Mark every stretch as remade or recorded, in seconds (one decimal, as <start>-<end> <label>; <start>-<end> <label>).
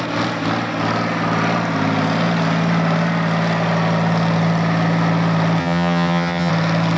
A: 0.0-5.6 recorded; 5.6-6.5 remade; 6.5-7.0 recorded